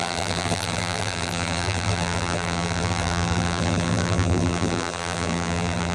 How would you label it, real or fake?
fake